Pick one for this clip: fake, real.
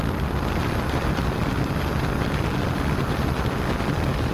real